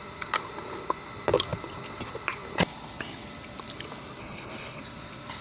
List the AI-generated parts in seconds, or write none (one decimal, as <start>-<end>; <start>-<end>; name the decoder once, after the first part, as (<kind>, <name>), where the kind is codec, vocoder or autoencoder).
4.2-4.8 (codec, HILCodec)